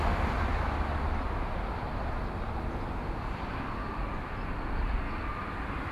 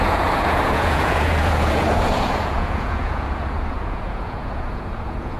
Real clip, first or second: first